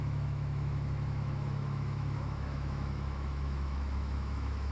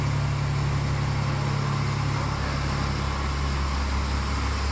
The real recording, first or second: second